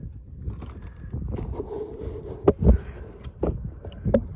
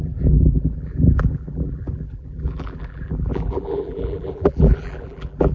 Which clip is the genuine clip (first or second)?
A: first